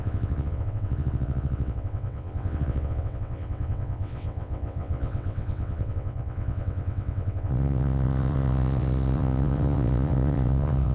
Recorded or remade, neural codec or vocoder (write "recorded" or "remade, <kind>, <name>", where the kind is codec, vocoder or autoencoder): remade, vocoder, WaveNeXt